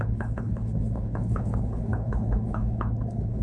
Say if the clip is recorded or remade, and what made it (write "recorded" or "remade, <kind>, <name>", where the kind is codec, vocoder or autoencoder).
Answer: remade, codec, HILCodec